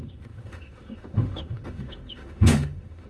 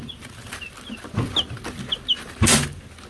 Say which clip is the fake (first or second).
first